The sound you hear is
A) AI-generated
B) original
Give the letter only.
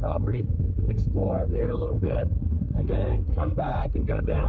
A